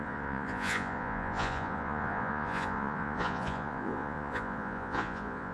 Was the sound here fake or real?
fake